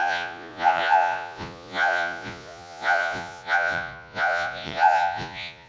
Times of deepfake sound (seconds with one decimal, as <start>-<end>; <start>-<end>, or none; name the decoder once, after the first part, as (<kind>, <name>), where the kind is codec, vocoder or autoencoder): 0.0-5.7 (vocoder, Vocos)

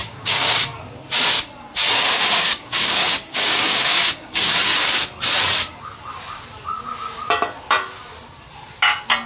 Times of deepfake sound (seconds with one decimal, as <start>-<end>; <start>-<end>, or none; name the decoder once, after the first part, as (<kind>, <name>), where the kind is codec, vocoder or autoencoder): 0.0-0.8 (codec, DAC); 2.0-5.0

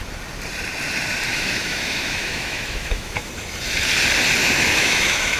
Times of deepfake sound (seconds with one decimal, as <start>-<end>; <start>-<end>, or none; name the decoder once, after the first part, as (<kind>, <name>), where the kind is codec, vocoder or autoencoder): 1.3-3.3 (autoencoder, DAC-VAE); 4.4-5.4

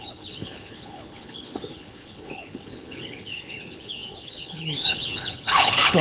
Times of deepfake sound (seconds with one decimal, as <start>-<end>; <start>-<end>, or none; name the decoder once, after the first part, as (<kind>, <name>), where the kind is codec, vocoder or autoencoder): 0.0-6.0 (codec, HILCodec)

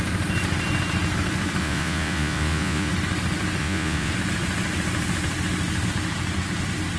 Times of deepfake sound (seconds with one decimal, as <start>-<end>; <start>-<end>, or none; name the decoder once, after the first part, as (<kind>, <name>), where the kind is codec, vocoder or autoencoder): 1.6-2.9 (vocoder, Vocos); 3.6-4.1

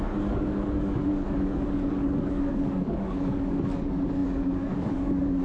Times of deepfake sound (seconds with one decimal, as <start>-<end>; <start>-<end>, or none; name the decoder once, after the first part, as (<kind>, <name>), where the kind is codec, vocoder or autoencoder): 0.0-5.4 (codec, DAC)

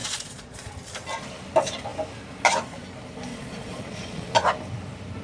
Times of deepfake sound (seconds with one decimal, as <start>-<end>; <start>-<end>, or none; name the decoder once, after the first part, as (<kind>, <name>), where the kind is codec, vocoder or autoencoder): 0.0-0.7 (vocoder, Vocos); 3.3-4.3

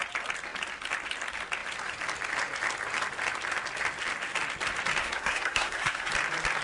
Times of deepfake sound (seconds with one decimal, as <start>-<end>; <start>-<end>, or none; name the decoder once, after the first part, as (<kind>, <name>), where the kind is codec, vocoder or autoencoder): 5.0-6.1 (codec, SNAC)